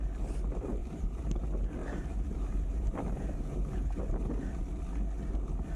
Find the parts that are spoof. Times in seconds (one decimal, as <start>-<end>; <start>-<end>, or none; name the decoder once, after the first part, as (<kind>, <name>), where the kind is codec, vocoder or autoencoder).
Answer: 0.8-1.4 (vocoder, BigVGAN v2); 1.8-4.0